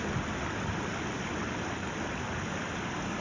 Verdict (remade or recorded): recorded